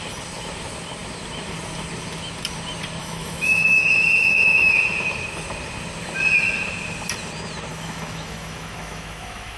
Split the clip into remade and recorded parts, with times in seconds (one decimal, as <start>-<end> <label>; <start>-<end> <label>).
0.0-3.0 recorded; 3.0-4.8 remade; 4.8-7.7 recorded; 7.7-9.6 remade